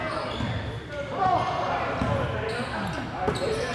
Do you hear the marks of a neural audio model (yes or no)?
no